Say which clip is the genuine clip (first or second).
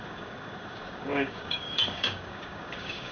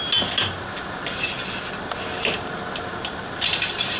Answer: second